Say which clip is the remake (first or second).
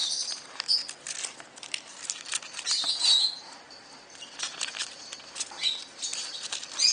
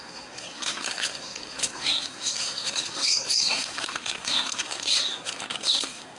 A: second